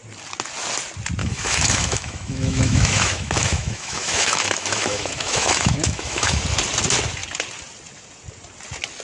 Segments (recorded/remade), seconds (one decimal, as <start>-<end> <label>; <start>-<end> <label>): 0.0-1.2 recorded; 1.2-6.4 remade; 6.4-9.0 recorded